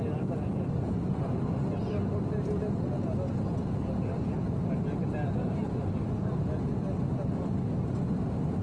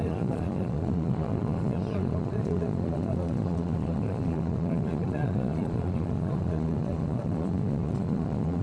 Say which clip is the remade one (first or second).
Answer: second